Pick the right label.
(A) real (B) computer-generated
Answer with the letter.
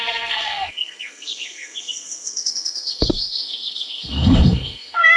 B